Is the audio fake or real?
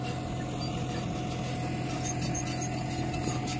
real